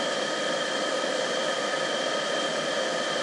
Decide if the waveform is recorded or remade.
remade